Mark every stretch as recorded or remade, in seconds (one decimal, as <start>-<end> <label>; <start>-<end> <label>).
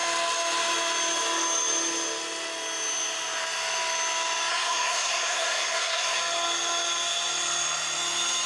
0.0-4.5 recorded; 4.5-6.2 remade; 6.2-8.5 recorded